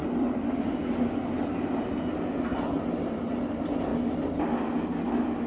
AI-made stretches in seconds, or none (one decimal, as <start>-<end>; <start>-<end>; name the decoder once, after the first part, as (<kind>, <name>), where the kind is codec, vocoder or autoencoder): none